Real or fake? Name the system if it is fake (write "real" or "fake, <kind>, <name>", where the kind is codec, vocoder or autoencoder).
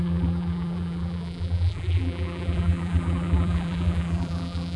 fake, vocoder, BigVGAN v2